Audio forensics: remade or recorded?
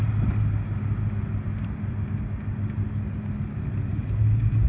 recorded